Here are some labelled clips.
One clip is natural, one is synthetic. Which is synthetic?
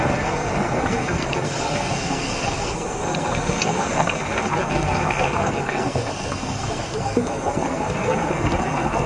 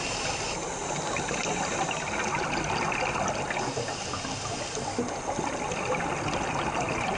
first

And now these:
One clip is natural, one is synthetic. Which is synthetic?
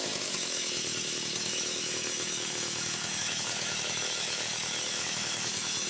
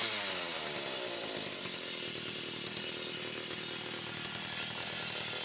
first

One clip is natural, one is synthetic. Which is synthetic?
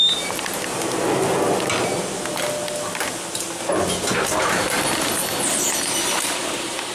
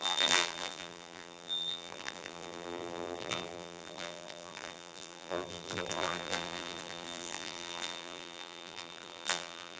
second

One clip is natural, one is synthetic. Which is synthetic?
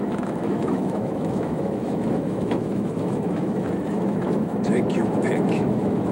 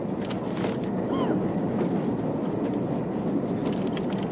first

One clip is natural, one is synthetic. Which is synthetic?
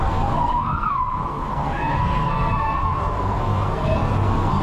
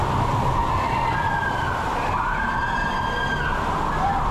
first